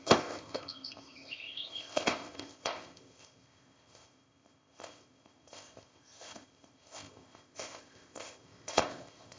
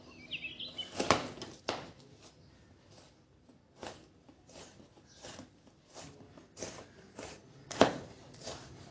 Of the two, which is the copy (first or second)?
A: first